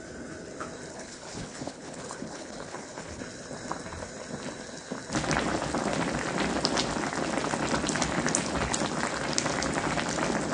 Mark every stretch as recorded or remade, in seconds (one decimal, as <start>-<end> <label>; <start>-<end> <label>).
0.0-0.9 recorded; 0.9-3.2 remade; 3.2-10.5 recorded